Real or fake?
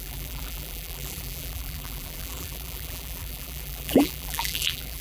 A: fake